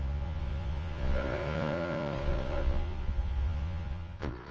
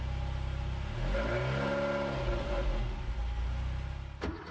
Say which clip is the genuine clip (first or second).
second